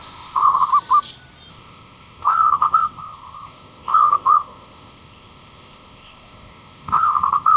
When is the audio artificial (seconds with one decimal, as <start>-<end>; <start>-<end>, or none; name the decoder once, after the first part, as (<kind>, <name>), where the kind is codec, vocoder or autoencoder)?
0.0-0.7 (codec, ZipCodec); 1.5-7.6